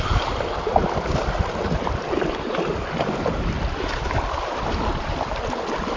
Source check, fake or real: real